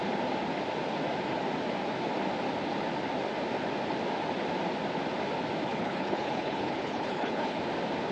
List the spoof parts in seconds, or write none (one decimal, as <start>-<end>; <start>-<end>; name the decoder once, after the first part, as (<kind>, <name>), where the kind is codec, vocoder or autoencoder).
5.7-7.6 (codec, HILCodec)